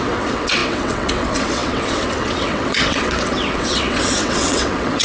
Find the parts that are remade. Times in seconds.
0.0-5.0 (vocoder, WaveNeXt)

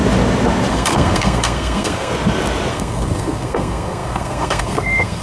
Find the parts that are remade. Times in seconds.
0.7-2.1 (codec, SNAC); 2.7-5.2